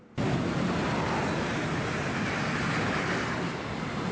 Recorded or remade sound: recorded